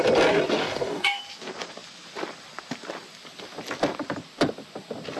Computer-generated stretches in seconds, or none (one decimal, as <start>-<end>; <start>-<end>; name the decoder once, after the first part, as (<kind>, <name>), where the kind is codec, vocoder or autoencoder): 0.6-1.2 (codec, DAC)